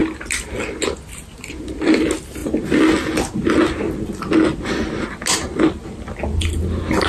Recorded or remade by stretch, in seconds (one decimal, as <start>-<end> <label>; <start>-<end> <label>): 0.0-7.1 recorded